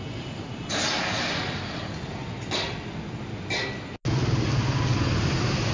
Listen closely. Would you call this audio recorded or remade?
recorded